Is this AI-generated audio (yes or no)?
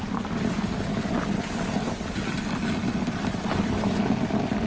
no